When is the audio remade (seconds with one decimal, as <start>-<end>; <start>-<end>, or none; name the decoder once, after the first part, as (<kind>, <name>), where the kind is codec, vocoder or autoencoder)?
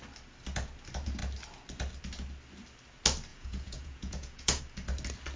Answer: 3.3-4.6 (vocoder, Vocos)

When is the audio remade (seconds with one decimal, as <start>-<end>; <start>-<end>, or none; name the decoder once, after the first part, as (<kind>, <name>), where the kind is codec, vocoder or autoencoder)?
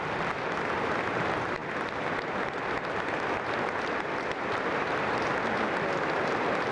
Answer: none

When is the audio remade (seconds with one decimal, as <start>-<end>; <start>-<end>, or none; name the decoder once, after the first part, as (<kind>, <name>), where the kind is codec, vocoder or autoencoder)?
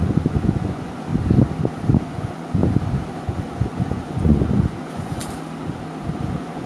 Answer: 0.0-1.1 (vocoder, Vocos); 2.0-2.6; 3.2-5.2; 6.2-6.7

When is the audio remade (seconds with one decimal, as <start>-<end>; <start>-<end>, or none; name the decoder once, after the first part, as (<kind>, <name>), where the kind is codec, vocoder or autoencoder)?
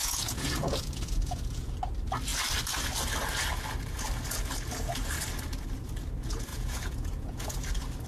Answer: 0.0-1.7 (vocoder, Vocos); 6.5-7.6